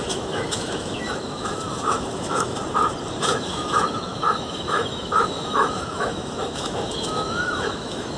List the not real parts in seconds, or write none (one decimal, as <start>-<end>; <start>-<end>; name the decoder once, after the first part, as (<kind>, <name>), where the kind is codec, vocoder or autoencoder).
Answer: 0.0-2.6 (autoencoder, DAC-VAE); 3.2-8.2